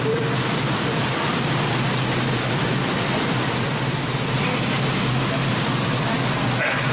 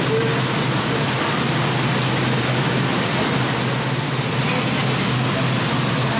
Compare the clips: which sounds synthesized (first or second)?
first